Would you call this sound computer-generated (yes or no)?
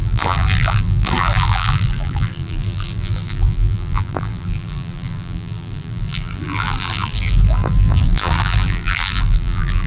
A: yes